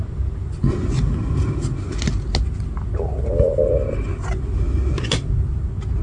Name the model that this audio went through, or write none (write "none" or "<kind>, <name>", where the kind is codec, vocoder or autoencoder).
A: none